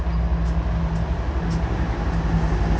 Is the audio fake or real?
real